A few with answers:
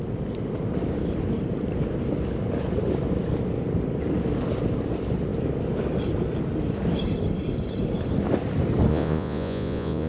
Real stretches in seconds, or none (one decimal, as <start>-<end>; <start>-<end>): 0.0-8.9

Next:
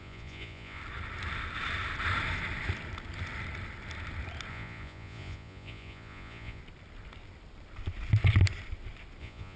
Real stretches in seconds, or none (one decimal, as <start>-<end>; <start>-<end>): 0.8-4.5; 6.6-9.2

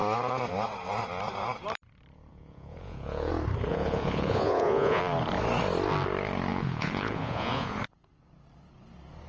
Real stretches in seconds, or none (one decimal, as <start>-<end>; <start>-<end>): 0.0-2.3; 3.3-3.7; 5.0-6.5; 7.8-9.3

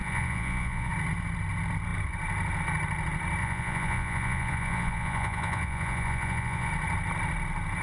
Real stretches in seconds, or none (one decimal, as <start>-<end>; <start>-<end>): 0.9-3.4; 6.7-7.8